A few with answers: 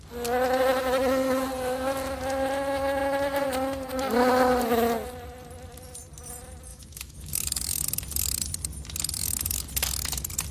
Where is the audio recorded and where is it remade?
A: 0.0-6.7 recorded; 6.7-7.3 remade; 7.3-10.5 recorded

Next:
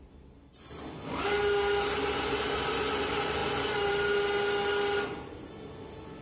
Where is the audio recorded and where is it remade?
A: 0.0-6.2 recorded

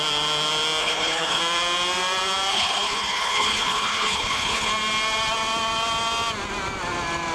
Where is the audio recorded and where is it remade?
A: 0.0-0.8 recorded; 0.8-1.4 remade; 1.4-2.5 recorded; 2.5-4.7 remade; 4.7-7.3 recorded

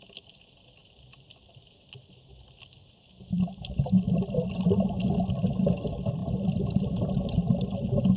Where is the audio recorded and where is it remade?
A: 0.0-0.8 recorded; 0.8-5.0 remade; 5.0-6.2 recorded; 6.2-7.2 remade; 7.2-8.2 recorded

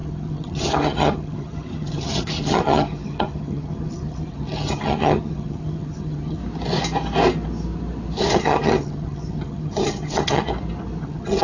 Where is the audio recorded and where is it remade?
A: 0.0-6.4 remade; 6.4-8.2 recorded; 8.2-10.5 remade; 10.5-11.0 recorded; 11.0-11.4 remade

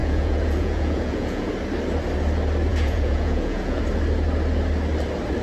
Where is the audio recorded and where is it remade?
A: 0.0-1.5 remade; 1.5-2.7 recorded; 2.7-3.8 remade; 3.8-5.4 recorded